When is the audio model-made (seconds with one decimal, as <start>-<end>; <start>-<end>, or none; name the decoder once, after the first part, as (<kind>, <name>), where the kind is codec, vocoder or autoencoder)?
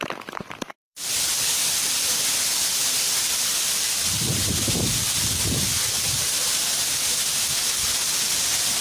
0.0-3.5 (vocoder, BigVGAN v2); 8.2-8.8